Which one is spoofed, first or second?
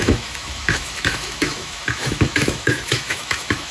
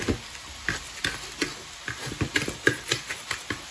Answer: first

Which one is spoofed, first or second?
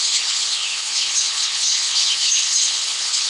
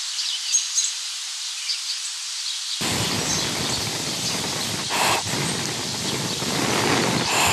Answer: first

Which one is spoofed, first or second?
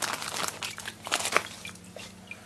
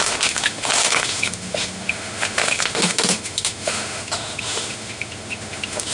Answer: second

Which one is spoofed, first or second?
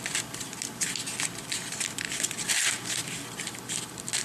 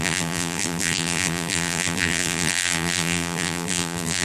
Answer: second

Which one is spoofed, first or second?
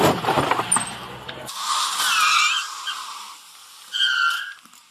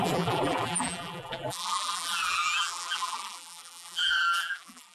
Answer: second